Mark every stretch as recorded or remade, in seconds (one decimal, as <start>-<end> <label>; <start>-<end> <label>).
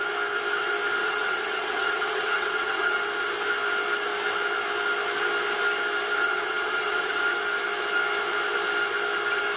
0.0-1.0 recorded; 1.0-3.0 remade; 3.0-6.2 recorded; 6.2-7.2 remade; 7.2-9.6 recorded